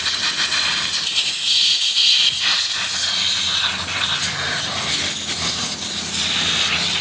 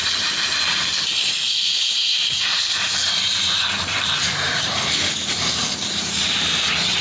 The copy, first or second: second